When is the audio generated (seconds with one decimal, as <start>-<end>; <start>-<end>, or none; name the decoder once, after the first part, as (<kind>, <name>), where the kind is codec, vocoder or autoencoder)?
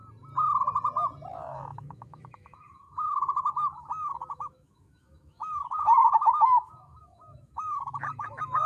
1.3-8.7 (autoencoder, DAC-VAE)